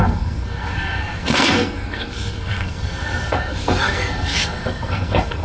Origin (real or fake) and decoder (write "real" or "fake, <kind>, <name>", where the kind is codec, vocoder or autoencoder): fake, codec, SNAC